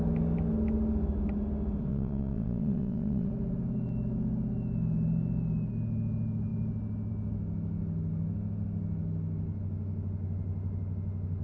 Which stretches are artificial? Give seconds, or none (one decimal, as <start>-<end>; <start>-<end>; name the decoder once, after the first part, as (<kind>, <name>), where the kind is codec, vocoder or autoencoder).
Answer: 1.9-3.3 (vocoder, Vocos)